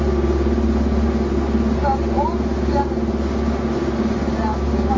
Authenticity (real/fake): real